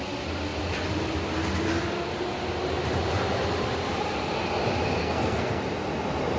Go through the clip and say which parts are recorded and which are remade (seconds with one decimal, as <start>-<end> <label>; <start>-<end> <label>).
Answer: 0.0-5.0 recorded; 5.0-5.6 remade; 5.6-6.4 recorded